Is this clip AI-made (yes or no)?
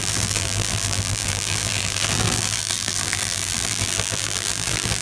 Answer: yes